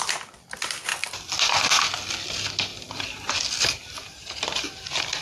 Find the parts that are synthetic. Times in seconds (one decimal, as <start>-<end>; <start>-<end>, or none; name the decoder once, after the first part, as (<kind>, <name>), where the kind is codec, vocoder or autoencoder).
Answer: 0.0-0.9 (vocoder, BigVGAN v2); 2.1-2.7; 3.6-5.2